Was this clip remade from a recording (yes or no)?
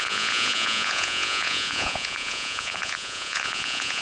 yes